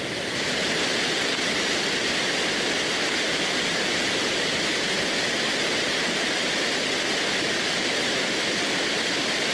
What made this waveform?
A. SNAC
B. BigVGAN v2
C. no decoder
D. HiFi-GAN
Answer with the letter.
B